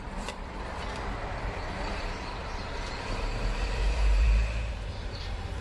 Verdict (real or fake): fake